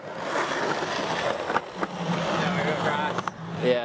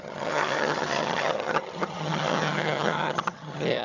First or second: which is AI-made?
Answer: second